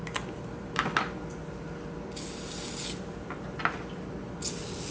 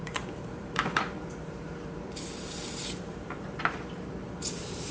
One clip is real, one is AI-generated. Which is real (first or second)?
first